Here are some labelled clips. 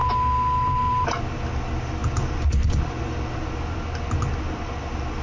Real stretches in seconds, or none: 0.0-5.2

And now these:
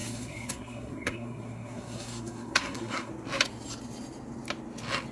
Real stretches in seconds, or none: 3.1-5.1

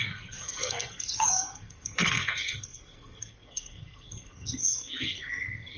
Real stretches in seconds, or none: none

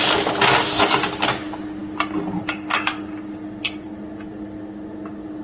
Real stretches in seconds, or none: 0.0-5.4

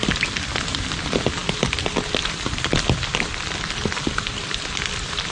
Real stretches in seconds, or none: 0.0-5.3